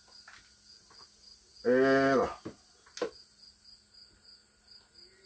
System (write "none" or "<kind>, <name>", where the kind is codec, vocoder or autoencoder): none